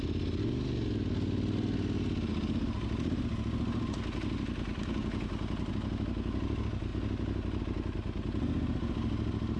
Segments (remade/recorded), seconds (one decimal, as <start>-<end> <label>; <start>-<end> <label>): 0.0-9.6 recorded